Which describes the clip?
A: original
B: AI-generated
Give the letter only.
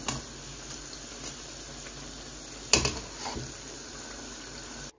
A